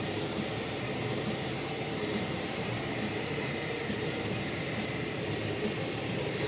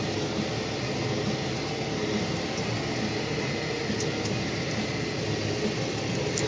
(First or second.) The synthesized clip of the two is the first